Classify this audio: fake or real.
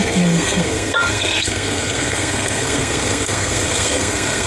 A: fake